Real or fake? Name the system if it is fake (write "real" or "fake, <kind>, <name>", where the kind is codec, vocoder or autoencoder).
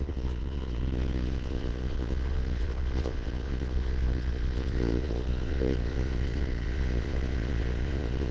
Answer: fake, vocoder, Vocos